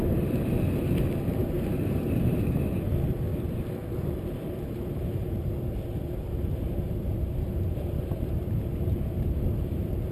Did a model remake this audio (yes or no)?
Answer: no